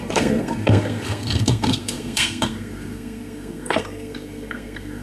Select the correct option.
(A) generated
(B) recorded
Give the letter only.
A